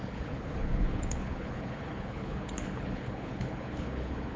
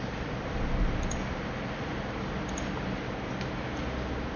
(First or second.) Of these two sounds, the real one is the second